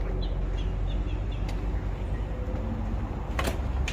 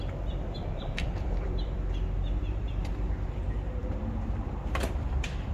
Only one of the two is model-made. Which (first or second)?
second